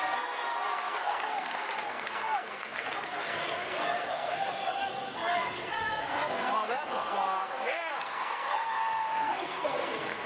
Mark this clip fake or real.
fake